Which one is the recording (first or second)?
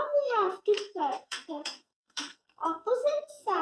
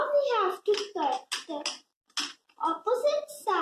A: second